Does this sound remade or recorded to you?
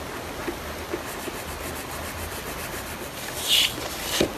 recorded